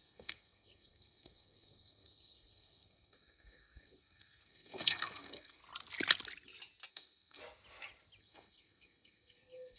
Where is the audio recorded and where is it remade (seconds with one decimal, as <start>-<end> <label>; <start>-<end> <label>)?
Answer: 0.0-5.6 remade; 5.6-6.9 recorded; 6.9-7.4 remade; 7.4-8.2 recorded; 8.2-9.8 remade